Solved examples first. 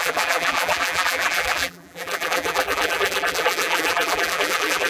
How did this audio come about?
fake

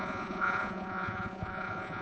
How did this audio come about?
fake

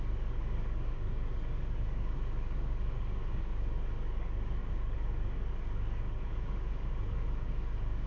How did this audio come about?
fake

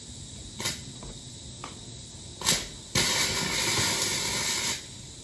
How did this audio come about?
real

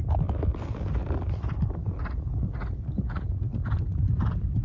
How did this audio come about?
real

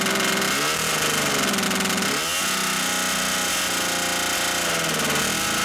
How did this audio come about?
real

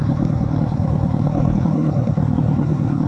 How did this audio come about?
fake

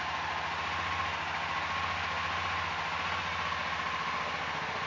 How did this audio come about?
real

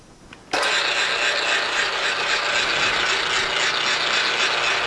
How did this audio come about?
real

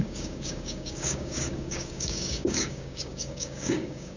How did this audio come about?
fake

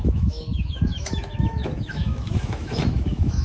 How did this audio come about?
fake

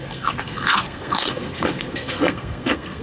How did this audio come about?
fake